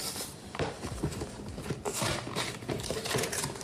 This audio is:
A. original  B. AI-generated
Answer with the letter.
B